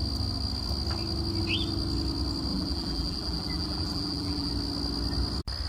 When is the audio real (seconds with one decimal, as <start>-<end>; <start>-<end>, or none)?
0.0-2.5; 4.5-5.7